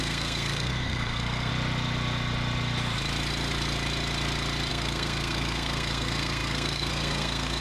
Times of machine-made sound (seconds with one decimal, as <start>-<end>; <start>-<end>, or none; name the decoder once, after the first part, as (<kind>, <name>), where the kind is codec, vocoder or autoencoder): 0.0-1.5 (codec, SNAC); 4.7-7.6